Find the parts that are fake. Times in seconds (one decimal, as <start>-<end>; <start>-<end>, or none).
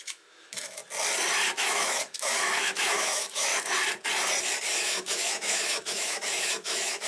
0.0-0.8; 1.6-3.5; 4.6-7.1